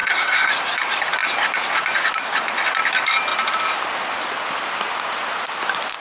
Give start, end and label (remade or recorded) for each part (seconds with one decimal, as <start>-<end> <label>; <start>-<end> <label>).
0.0-0.5 remade; 0.5-6.0 recorded